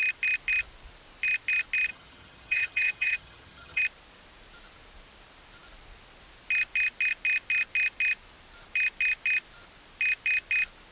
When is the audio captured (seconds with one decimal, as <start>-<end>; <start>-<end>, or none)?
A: 0.0-1.9; 3.8-10.9